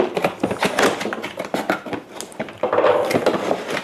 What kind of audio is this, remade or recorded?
recorded